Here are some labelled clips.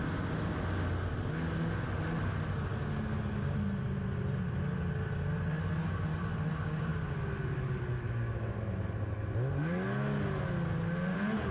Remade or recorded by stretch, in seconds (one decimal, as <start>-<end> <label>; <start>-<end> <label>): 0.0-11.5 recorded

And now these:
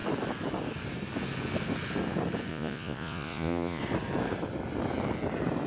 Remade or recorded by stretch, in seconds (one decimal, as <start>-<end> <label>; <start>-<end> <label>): 0.0-2.5 recorded; 2.5-3.8 remade; 3.8-5.7 recorded

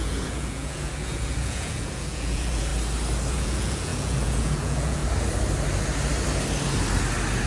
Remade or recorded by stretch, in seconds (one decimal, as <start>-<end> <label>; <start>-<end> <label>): 0.0-2.7 remade; 2.7-3.3 recorded; 3.3-5.0 remade; 5.0-7.5 recorded